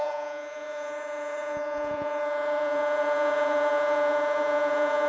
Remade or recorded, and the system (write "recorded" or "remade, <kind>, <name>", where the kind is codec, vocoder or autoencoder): remade, vocoder, Vocos